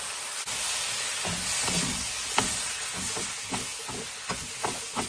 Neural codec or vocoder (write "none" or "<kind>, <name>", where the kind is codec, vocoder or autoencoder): none